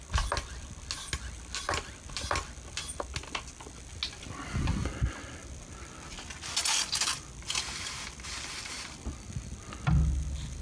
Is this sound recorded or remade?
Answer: recorded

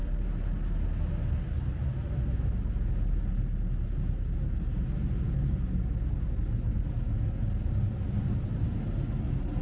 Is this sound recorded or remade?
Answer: recorded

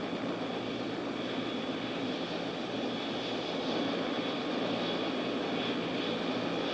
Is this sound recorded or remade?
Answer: recorded